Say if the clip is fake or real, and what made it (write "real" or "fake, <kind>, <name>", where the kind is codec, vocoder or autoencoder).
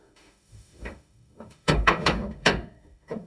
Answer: fake, autoencoder, DAC-VAE